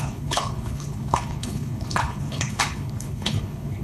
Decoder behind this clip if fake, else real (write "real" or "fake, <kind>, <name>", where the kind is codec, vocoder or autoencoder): fake, codec, HILCodec